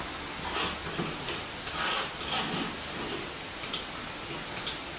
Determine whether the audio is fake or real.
real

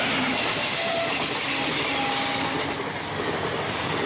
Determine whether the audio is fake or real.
real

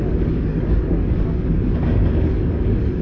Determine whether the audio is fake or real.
fake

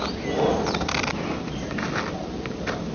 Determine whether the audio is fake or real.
real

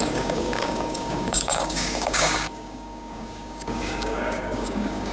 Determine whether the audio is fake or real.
fake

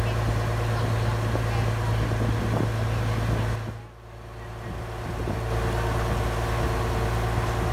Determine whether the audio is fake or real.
real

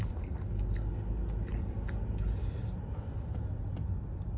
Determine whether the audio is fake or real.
real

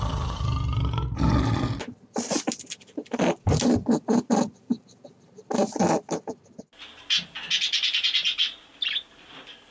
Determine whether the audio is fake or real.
real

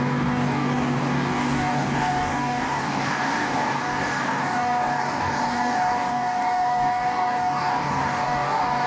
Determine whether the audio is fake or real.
fake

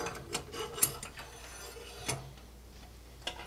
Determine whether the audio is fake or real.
real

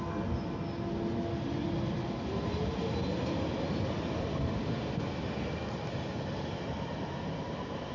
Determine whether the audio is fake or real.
real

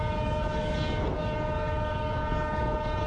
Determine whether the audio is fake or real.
fake